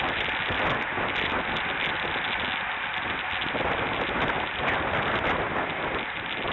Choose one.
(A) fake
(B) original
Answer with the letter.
B